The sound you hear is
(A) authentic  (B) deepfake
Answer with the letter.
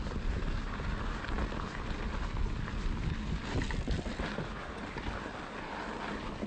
A